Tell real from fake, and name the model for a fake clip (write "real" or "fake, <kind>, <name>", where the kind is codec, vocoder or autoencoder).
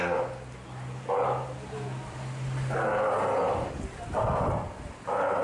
real